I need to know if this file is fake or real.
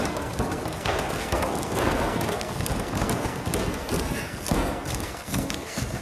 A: fake